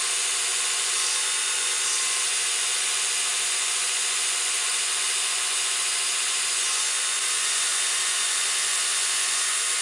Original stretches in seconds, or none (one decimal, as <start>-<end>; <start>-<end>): none